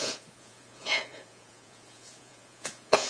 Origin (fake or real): fake